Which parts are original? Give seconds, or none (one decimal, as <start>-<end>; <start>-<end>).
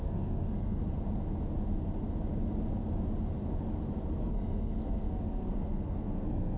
0.8-4.2